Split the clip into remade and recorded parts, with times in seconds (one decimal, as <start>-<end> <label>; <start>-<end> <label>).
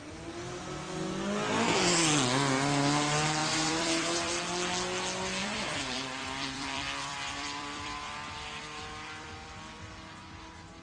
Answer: 0.0-3.4 recorded; 3.4-4.4 remade; 4.4-5.4 recorded; 5.4-9.5 remade; 9.5-10.8 recorded